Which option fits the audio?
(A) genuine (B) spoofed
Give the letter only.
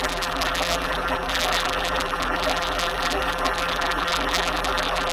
B